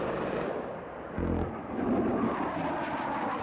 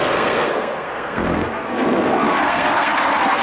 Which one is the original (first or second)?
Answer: first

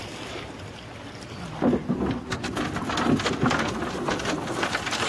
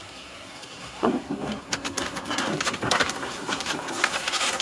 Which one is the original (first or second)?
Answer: first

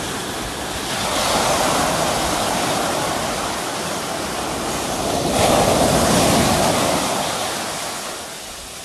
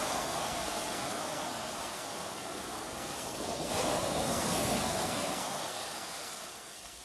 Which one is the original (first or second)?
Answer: first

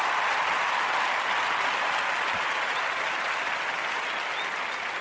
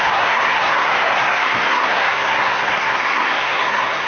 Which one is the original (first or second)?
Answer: first